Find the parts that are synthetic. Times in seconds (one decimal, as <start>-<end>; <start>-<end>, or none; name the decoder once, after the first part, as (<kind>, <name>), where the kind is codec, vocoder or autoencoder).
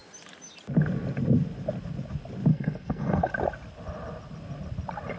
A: 2.5-3.3 (codec, SNAC)